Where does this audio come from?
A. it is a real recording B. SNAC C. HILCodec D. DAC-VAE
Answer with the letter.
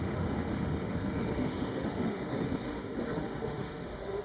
D